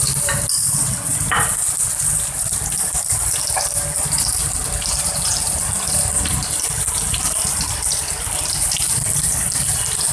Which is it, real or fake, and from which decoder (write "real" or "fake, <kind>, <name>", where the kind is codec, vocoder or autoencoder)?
real